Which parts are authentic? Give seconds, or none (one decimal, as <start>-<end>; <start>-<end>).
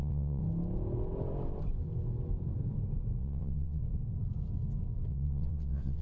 0.4-3.2; 3.8-5.1